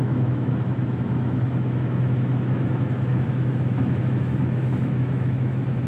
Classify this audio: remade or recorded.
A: remade